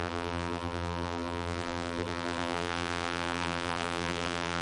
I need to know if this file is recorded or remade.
remade